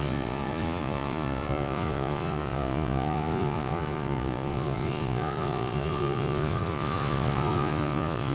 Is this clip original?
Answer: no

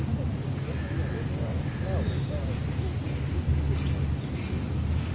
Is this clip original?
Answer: yes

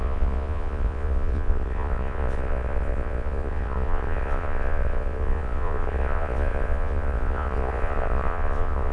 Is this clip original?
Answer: no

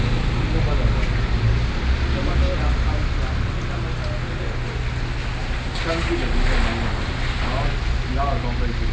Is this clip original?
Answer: yes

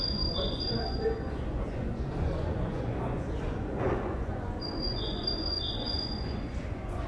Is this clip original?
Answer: no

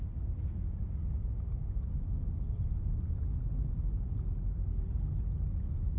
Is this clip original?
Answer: yes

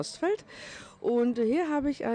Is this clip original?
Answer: yes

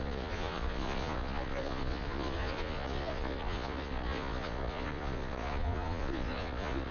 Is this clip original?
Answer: no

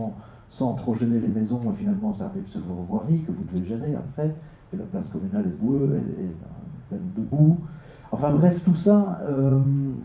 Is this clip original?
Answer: no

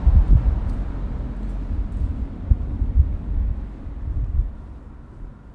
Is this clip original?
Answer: yes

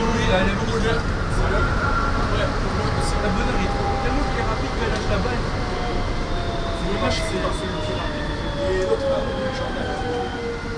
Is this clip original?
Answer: yes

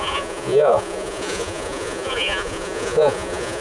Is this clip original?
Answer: no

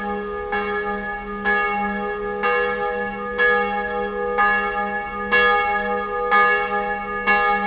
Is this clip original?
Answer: yes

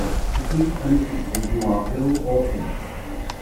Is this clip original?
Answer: yes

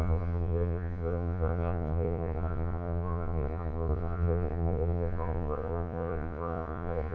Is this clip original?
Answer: no